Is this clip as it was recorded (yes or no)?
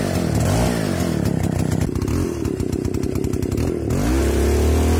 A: yes